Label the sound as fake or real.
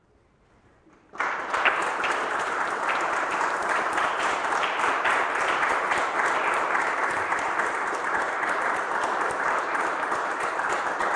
fake